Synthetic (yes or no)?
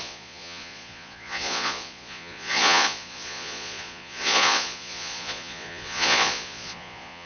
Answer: yes